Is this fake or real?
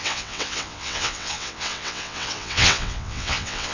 fake